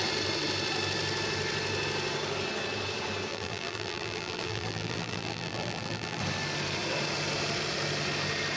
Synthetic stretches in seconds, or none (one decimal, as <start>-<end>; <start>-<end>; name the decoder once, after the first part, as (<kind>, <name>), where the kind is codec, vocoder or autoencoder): 3.3-6.2 (vocoder, BigVGAN v2)

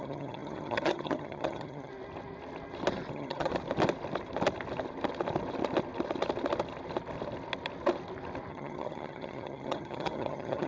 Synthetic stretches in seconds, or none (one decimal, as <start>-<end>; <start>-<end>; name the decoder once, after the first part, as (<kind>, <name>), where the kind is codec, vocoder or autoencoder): 0.0-1.9 (vocoder, HiFi-GAN); 3.1-3.5; 8.5-10.7

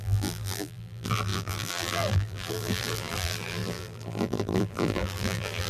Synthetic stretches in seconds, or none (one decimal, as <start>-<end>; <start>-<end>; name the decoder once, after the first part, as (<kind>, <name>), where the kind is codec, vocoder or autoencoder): 0.0-5.7 (vocoder, BigVGAN v2)

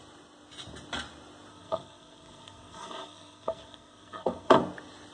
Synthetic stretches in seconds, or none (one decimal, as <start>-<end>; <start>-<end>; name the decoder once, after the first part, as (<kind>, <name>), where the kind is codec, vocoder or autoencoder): 1.5-4.6 (codec, SNAC)